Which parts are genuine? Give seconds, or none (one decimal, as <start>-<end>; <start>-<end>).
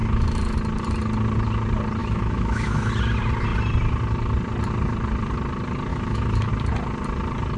0.0-2.0; 2.9-5.9; 6.5-7.6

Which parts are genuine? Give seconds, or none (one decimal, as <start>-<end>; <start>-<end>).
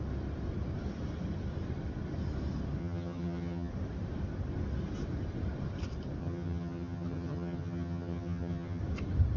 0.0-2.8; 3.7-6.2; 8.8-9.4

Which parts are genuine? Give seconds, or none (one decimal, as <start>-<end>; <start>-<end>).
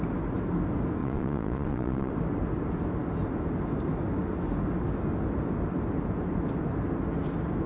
0.0-1.0; 2.1-7.7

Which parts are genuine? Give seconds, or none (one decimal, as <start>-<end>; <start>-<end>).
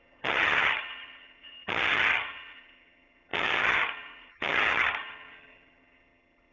none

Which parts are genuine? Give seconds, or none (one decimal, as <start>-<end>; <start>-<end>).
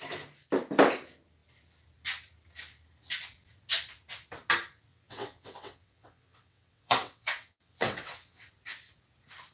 0.0-4.9; 8.5-9.5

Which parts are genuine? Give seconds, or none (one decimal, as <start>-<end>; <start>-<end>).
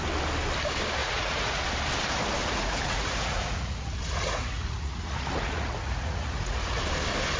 0.0-1.0; 1.6-2.4; 6.8-7.4